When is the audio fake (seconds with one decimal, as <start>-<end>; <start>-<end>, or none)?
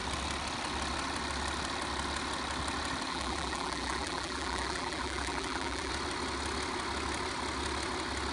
3.1-5.9